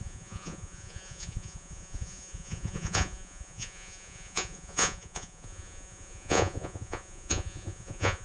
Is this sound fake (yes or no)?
yes